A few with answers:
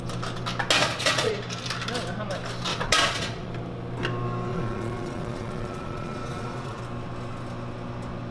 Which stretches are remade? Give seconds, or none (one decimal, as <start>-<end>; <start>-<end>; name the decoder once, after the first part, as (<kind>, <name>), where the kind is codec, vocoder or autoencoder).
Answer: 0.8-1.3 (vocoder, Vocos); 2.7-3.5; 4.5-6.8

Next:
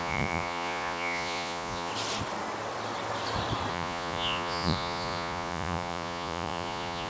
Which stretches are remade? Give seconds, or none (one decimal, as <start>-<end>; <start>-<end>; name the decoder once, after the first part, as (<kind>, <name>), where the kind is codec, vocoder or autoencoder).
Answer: 0.0-1.9 (vocoder, Vocos); 3.7-7.1

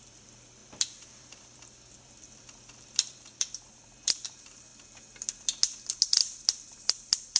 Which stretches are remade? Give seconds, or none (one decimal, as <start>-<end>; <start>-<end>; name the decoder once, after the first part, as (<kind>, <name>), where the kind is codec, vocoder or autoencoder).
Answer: 0.0-4.7 (vocoder, BigVGAN v2); 6.7-7.4